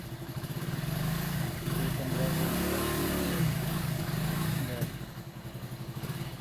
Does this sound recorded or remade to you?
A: remade